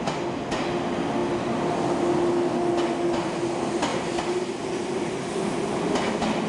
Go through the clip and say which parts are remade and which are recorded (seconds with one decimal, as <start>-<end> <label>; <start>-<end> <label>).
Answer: 0.0-6.5 recorded